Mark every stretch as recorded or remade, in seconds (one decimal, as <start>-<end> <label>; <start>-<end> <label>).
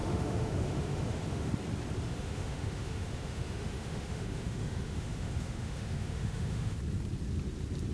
0.0-1.5 remade; 1.5-2.1 recorded; 2.1-6.8 remade; 6.8-7.9 recorded